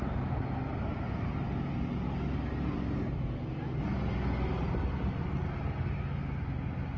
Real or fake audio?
real